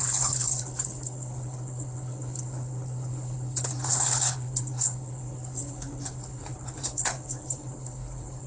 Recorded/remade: remade